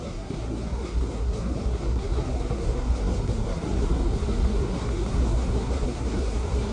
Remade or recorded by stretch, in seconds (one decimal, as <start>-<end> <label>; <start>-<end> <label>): 0.0-6.7 remade